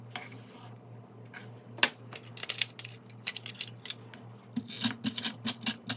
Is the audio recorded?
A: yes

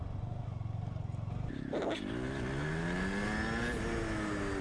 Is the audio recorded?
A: yes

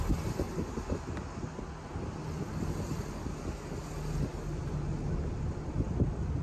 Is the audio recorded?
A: yes